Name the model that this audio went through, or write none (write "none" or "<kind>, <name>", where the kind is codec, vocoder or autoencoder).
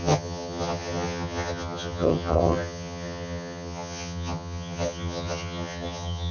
vocoder, HiFi-GAN